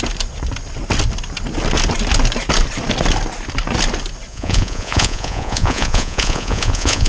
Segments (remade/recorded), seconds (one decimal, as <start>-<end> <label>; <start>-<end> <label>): 0.0-4.3 recorded; 4.3-7.1 remade